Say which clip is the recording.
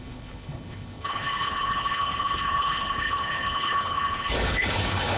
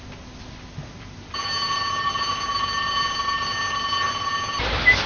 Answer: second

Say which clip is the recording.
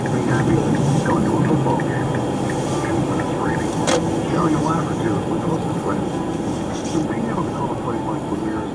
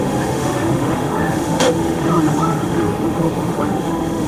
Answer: first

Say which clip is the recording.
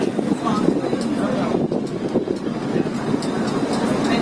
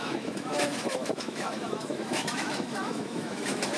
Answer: first